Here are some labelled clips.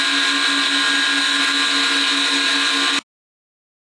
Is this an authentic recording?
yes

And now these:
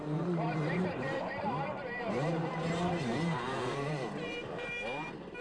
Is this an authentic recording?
no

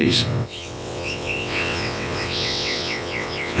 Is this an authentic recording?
no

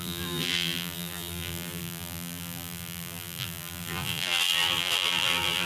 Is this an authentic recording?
no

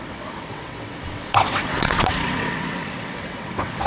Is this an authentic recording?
no